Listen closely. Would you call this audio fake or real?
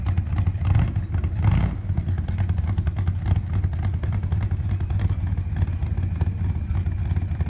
real